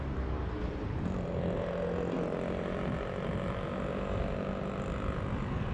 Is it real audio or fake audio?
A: real